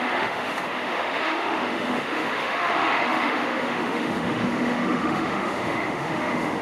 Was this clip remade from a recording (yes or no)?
yes